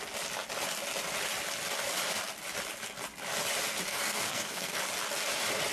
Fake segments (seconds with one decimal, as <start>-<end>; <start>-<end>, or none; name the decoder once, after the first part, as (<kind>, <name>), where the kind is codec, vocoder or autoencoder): 3.9-4.8 (codec, SNAC)